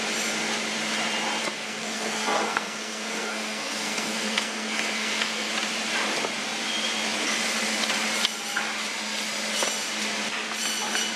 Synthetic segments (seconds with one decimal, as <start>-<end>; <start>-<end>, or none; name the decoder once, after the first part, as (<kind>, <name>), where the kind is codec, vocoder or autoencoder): 1.4-5.5 (codec, SNAC)